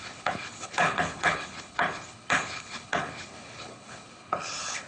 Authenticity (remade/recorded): remade